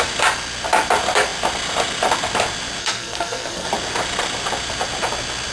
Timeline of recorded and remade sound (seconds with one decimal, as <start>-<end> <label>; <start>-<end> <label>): 0.0-2.8 recorded; 2.8-3.7 remade; 3.7-5.5 recorded